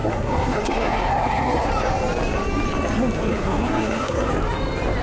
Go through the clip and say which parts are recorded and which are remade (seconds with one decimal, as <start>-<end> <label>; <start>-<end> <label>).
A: 0.0-1.7 remade; 1.7-3.3 recorded; 3.3-4.3 remade; 4.3-5.0 recorded